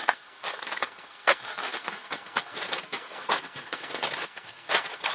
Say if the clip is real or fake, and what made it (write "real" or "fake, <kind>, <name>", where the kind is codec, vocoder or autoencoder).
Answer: fake, codec, SNAC